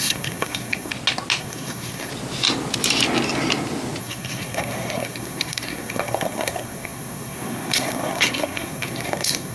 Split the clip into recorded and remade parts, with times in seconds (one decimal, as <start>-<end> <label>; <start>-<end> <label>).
0.0-0.9 remade; 0.9-1.4 recorded; 1.4-2.1 remade; 2.1-4.0 recorded; 4.0-9.5 remade